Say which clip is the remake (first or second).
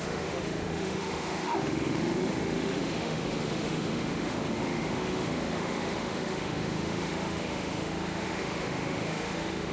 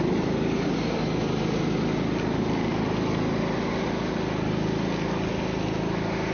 first